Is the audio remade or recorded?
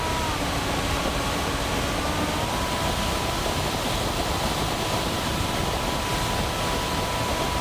recorded